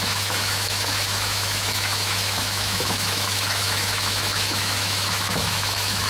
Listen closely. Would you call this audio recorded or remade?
remade